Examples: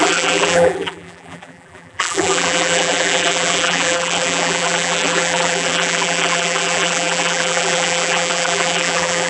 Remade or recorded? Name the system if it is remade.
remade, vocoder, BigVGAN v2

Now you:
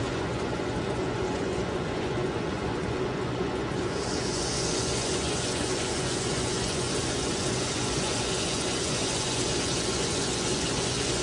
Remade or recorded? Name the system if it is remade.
remade, vocoder, Vocos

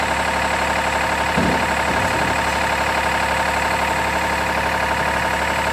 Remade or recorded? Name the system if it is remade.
recorded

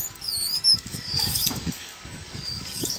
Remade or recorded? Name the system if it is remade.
remade, codec, DAC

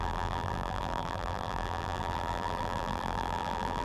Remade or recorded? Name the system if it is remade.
remade, vocoder, BigVGAN v2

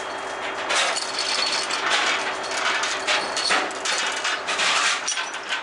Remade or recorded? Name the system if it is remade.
recorded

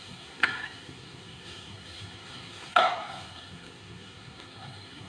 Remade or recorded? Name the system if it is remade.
remade, codec, SNAC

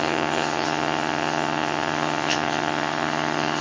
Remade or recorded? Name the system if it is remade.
remade, vocoder, HiFi-GAN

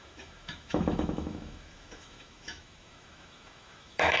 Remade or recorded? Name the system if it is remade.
remade, autoencoder, DAC-VAE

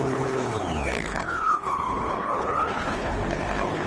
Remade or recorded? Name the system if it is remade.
remade, codec, HILCodec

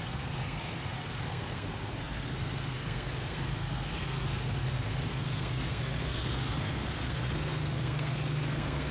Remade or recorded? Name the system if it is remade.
remade, codec, SNAC